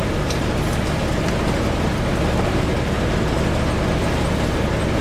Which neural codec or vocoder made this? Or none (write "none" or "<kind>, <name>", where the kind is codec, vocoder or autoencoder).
none